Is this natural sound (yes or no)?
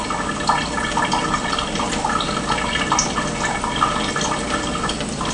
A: yes